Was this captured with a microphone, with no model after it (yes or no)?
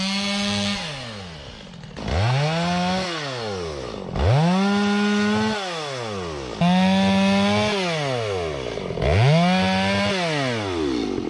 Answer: yes